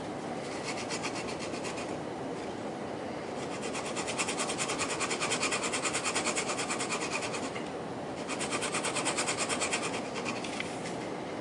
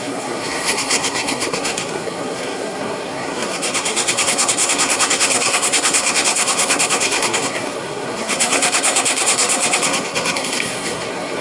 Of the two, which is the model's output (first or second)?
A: second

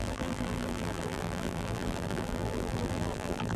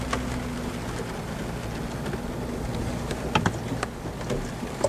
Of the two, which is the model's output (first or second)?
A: first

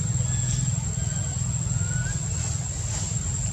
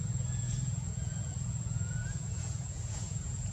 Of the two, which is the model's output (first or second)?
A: second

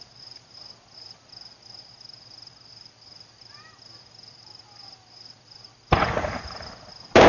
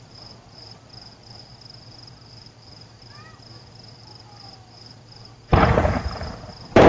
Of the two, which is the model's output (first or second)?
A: second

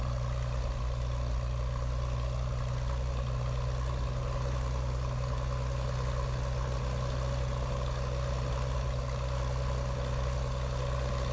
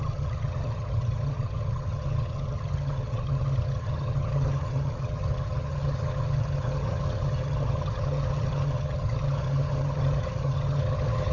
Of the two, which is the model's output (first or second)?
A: second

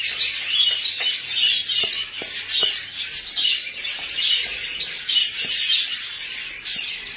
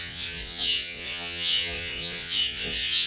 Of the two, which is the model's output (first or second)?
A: second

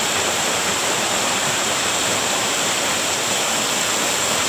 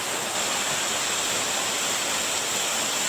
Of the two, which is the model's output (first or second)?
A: first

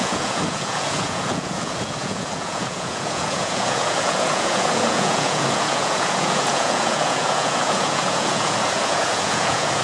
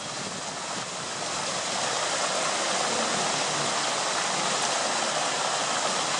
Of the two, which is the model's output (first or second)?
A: first